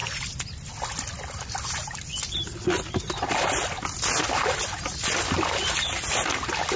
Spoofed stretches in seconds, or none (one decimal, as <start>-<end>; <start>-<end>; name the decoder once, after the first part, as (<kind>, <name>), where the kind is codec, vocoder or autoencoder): none